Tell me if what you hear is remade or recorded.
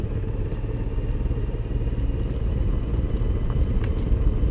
recorded